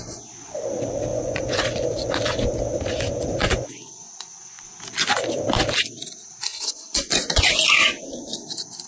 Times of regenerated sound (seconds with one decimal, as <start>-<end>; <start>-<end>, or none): 1.1-2.2; 3.3-4.6; 6.5-7.5